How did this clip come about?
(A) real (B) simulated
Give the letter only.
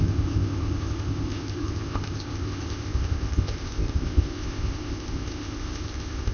B